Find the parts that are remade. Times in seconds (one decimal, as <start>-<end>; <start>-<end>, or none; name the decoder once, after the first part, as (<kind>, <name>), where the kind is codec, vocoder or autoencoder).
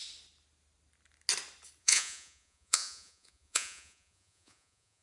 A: 1.8-5.0 (vocoder, Vocos)